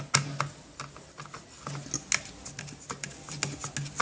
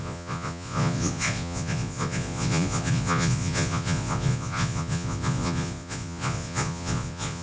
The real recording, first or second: first